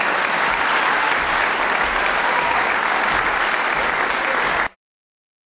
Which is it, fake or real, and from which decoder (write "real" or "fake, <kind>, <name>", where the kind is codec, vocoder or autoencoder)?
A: real